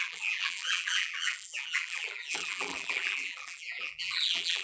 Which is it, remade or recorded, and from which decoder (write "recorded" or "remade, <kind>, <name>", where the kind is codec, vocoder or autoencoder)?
remade, vocoder, BigVGAN v2